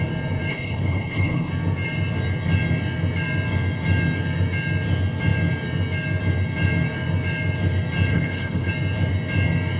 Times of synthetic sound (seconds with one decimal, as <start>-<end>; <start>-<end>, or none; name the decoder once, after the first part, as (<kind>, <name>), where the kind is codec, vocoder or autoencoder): 0.5-1.5 (codec, HILCodec); 8.1-8.7